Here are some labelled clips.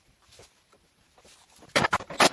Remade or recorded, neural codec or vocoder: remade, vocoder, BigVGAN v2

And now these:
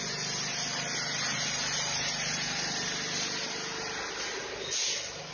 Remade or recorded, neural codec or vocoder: recorded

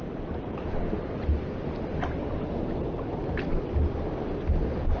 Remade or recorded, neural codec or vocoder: recorded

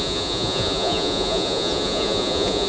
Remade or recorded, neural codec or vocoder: remade, vocoder, Vocos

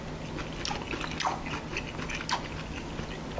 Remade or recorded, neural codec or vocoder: recorded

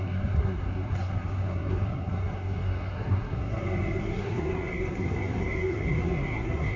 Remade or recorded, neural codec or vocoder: remade, codec, SNAC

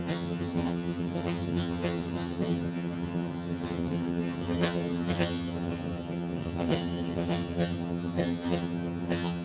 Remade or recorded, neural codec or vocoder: remade, vocoder, HiFi-GAN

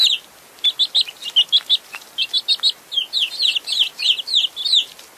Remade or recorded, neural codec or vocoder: recorded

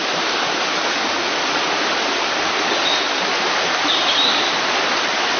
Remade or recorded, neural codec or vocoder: recorded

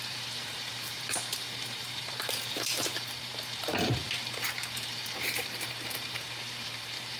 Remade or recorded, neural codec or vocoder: remade, vocoder, BigVGAN v2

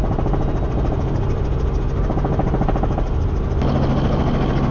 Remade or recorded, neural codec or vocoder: recorded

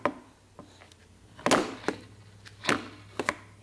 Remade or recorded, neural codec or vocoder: recorded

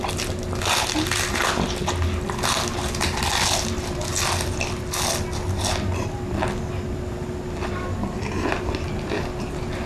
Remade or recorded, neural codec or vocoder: recorded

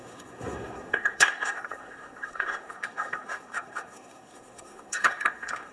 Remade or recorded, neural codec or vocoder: remade, codec, SNAC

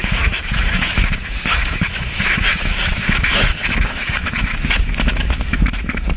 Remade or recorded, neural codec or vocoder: remade, autoencoder, DAC-VAE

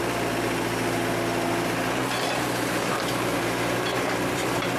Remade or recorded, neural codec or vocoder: remade, vocoder, BigVGAN v2